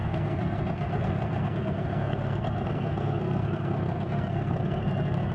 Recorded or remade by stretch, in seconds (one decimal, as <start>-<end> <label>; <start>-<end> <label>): 0.0-5.3 remade